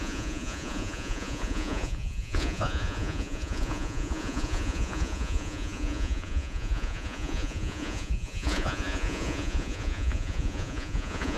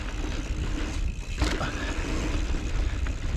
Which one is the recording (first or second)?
second